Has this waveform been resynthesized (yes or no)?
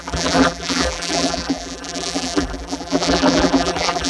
yes